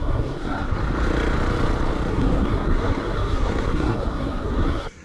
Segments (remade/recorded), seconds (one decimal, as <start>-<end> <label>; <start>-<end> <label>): 0.0-0.8 remade; 0.8-2.1 recorded; 2.1-5.0 remade